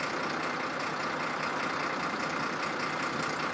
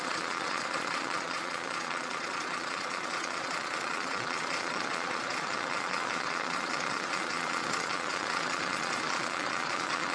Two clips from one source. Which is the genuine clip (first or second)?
first